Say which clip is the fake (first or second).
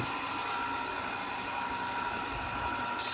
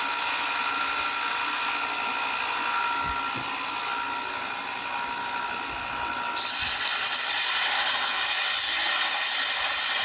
first